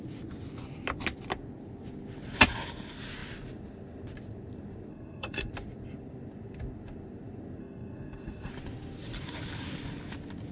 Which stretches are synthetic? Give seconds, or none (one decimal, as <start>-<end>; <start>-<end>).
4.9-5.5; 7.6-8.5